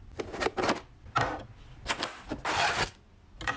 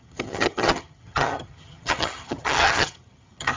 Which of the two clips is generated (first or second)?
second